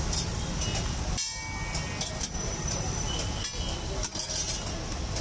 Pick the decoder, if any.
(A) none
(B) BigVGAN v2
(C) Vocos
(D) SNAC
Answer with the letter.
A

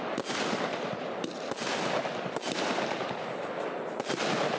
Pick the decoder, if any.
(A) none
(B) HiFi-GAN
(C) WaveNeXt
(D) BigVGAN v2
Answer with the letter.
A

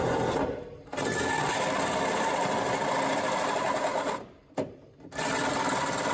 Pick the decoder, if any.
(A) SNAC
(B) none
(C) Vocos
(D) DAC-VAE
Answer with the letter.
B